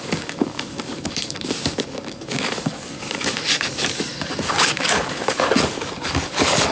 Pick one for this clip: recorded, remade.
remade